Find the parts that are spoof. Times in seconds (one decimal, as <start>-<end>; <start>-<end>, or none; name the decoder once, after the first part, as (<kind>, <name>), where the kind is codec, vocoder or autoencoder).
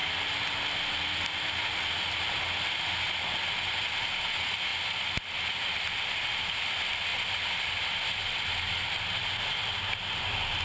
none